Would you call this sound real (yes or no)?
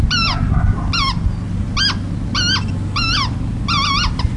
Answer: yes